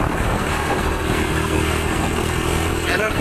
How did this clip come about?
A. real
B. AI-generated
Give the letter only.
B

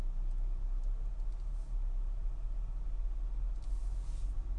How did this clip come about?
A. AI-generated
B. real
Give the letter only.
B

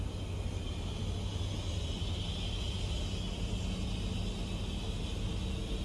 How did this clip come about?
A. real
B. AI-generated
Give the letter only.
A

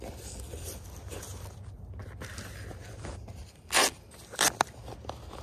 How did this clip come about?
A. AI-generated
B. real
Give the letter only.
B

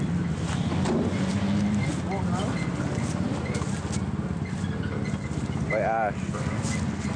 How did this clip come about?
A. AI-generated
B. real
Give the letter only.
B